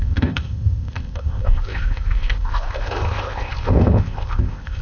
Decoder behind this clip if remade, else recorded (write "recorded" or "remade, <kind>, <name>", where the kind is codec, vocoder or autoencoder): remade, codec, ZipCodec